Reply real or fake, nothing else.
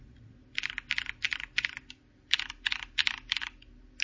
real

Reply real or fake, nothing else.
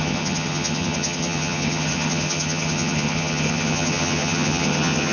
fake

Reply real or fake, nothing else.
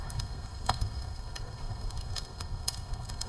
fake